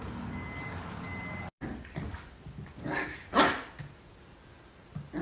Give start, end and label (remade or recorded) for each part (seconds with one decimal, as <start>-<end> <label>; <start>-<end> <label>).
0.0-5.2 recorded